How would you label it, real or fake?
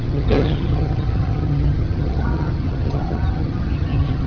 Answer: fake